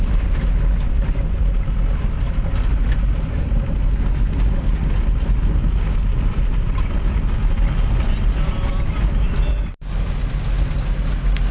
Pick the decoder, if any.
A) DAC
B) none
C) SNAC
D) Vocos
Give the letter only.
B